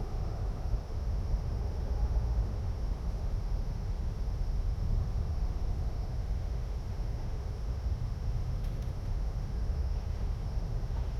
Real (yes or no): no